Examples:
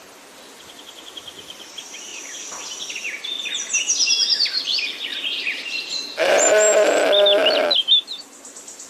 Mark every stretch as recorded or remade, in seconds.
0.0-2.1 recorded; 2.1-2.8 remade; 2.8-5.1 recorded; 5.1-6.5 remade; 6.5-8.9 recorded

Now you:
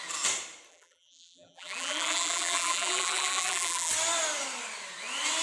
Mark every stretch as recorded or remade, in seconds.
0.0-0.7 recorded; 0.7-3.9 remade; 3.9-5.4 recorded